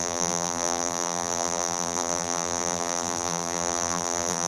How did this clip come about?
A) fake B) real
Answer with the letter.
A